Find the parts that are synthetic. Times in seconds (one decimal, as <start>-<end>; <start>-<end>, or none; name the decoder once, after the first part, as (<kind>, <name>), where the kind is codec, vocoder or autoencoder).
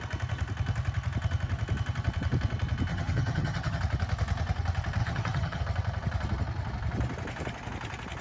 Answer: 2.9-3.8 (vocoder, HiFi-GAN); 5.0-5.6